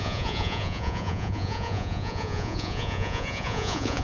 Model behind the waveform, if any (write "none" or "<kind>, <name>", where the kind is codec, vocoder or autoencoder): vocoder, Vocos